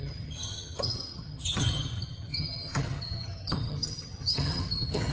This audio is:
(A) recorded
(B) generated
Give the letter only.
B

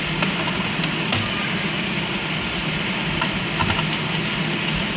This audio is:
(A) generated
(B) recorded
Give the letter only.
B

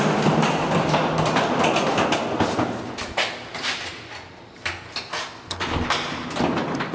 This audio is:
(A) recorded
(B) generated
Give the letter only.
A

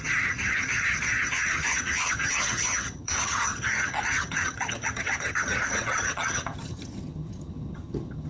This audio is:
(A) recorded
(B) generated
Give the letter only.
B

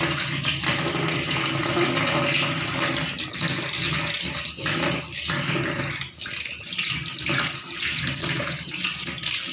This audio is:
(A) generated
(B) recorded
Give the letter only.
B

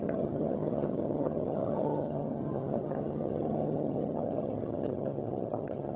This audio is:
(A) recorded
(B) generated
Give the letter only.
B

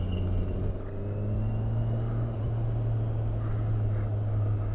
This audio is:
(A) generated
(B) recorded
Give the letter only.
B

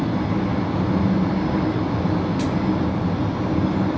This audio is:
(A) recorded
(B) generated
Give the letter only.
A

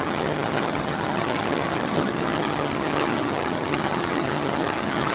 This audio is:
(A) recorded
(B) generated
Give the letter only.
B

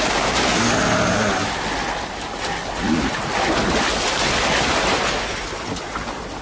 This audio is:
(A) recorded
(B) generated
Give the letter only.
A